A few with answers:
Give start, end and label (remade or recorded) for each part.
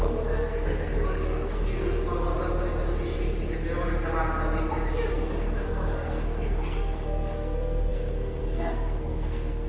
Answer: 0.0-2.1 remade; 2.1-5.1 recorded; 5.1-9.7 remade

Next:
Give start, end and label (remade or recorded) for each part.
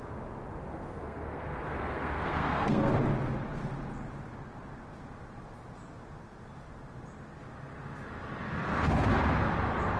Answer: 0.0-0.7 recorded; 0.7-2.9 remade; 2.9-10.0 recorded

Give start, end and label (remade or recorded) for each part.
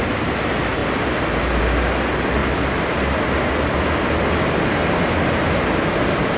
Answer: 0.0-6.4 recorded